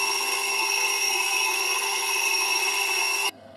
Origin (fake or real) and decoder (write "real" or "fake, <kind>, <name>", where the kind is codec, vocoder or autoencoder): fake, codec, SNAC